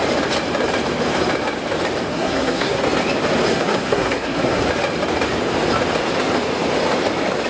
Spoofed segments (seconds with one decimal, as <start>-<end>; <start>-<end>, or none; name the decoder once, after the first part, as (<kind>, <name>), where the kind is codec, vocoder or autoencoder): 2.1-2.8 (codec, SNAC); 3.5-4.7